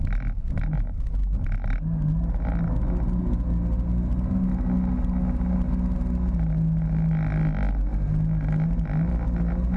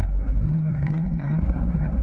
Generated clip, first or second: second